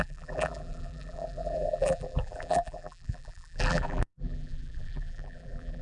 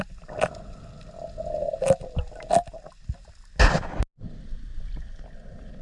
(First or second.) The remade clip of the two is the first